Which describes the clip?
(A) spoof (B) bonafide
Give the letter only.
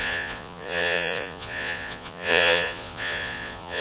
A